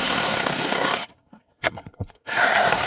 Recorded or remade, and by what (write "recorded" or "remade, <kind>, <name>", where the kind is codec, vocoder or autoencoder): remade, codec, SNAC